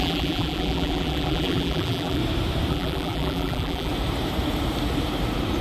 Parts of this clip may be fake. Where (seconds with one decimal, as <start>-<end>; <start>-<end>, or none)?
0.0-2.2; 2.7-3.9